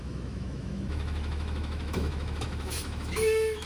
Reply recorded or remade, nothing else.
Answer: remade